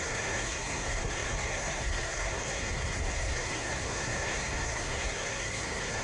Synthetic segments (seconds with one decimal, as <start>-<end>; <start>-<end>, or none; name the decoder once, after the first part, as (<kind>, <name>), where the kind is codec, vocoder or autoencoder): 0.0-6.0 (codec, SNAC)